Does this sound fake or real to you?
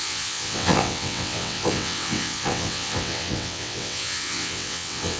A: fake